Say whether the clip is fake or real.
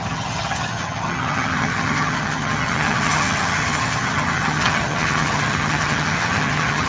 fake